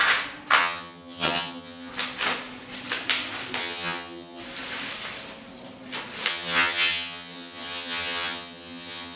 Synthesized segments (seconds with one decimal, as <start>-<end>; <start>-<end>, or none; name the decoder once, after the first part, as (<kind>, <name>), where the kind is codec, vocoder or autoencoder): 0.6-1.9 (vocoder, HiFi-GAN); 3.6-4.4; 6.3-9.2